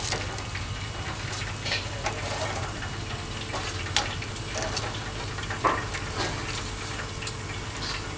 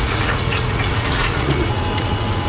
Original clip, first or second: first